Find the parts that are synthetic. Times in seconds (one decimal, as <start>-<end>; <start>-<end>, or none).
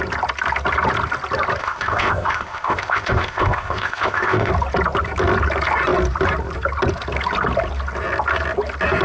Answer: 1.6-4.5